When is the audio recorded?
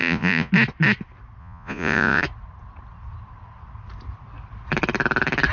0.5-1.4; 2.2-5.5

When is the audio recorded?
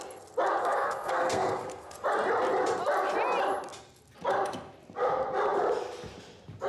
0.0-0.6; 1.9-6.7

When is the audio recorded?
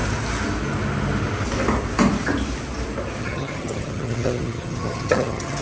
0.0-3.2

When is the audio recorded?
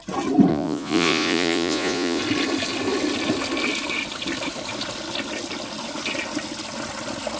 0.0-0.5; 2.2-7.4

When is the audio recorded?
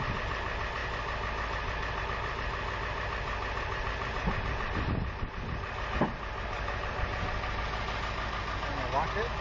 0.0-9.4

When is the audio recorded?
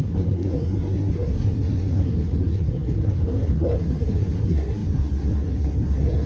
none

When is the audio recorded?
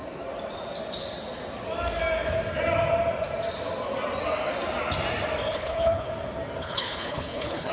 0.0-5.5; 6.1-6.6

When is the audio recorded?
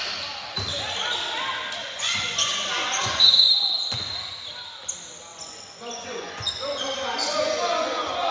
0.0-1.8; 4.1-5.3; 6.8-7.2